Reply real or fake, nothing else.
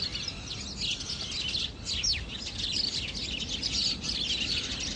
real